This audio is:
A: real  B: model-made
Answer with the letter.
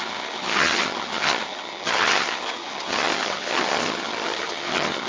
B